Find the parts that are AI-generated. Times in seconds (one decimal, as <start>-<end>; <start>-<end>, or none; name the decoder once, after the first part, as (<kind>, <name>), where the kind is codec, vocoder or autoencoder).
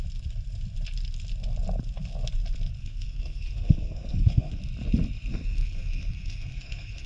2.8-4.6 (codec, SNAC); 5.3-7.1